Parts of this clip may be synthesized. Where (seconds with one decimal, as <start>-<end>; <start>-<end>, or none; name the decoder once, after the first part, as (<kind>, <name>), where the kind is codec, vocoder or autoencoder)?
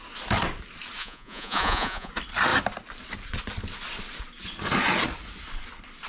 1.0-2.1 (vocoder, Vocos)